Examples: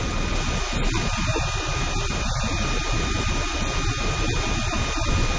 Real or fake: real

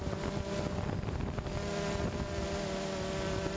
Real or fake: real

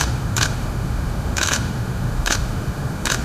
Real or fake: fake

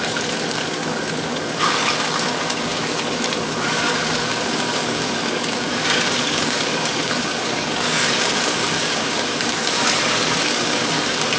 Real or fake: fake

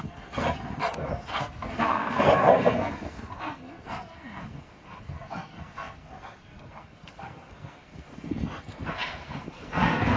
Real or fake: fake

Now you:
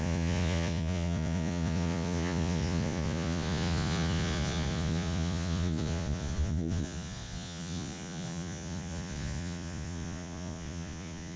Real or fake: fake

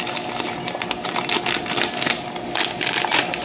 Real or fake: real